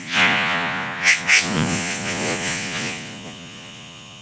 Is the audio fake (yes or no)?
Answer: yes